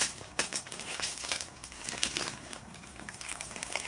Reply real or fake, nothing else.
fake